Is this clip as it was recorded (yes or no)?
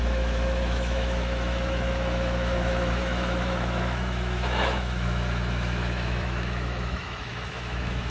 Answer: no